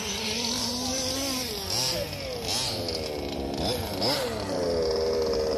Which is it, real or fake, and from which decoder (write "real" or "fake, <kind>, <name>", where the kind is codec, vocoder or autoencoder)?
real